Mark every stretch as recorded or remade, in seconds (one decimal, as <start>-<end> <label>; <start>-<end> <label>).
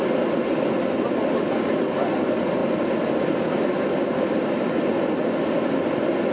0.0-6.3 recorded